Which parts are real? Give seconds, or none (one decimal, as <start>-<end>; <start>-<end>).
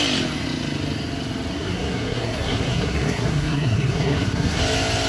0.0-1.5; 4.6-5.1